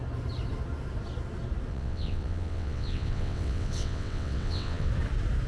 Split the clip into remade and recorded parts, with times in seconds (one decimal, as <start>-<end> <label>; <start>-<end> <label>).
0.0-1.7 recorded; 1.7-4.9 remade; 4.9-5.5 recorded

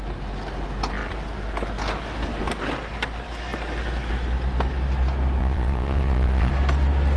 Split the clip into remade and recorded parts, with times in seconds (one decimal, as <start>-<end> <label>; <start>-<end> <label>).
0.0-5.4 recorded; 5.4-6.5 remade; 6.5-7.2 recorded

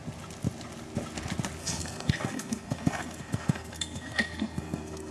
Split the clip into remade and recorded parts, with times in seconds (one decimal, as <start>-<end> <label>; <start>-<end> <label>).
0.0-1.6 recorded; 1.6-5.1 remade

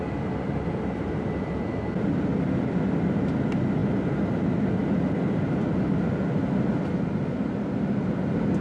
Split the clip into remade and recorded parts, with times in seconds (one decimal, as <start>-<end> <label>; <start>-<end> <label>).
0.0-8.6 recorded

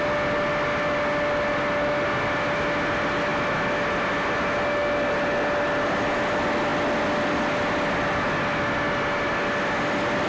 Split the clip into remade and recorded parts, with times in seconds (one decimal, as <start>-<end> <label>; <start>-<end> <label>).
0.0-10.3 recorded

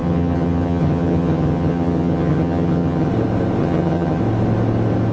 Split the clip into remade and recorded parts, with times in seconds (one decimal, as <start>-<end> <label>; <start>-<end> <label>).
0.0-3.1 remade; 3.1-3.6 recorded; 3.6-4.2 remade; 4.2-5.1 recorded

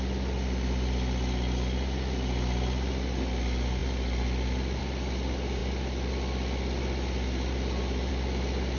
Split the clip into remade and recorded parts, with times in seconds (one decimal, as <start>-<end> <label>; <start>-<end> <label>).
0.0-8.8 recorded